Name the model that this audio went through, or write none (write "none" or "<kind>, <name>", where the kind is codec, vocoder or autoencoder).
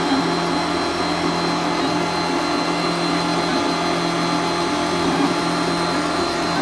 none